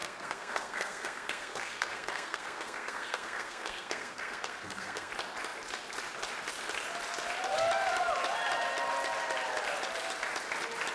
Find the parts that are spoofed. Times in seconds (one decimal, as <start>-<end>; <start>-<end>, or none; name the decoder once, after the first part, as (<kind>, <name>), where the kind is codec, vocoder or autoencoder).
0.0-5.1 (codec, SNAC)